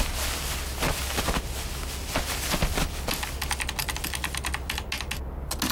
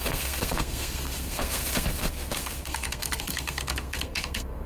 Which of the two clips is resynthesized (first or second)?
second